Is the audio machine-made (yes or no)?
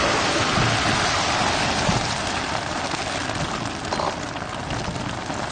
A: no